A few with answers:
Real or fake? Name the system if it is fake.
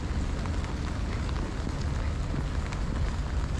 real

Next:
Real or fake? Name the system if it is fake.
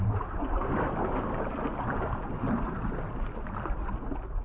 real